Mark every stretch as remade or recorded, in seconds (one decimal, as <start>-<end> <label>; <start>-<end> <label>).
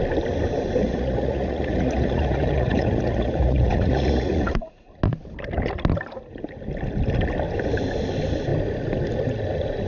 0.0-0.8 recorded; 0.8-4.9 remade; 4.9-9.9 recorded